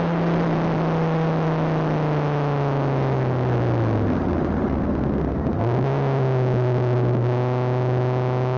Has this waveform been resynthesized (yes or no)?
no